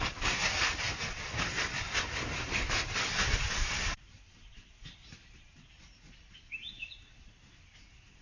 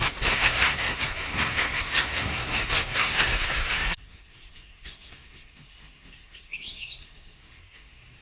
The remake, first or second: second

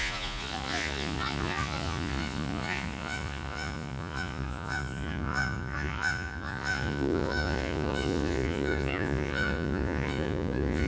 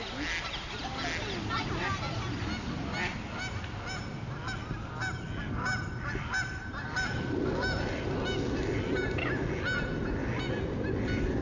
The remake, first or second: first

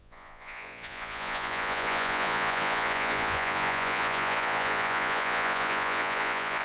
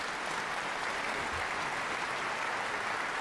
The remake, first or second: first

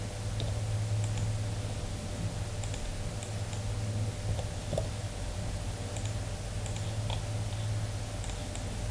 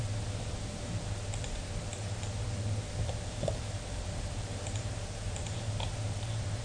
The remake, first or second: second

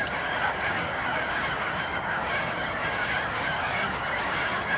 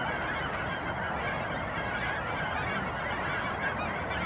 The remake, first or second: first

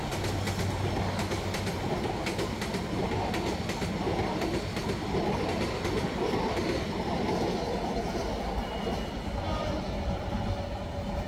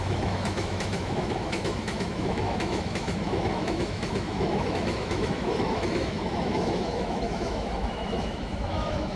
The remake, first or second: second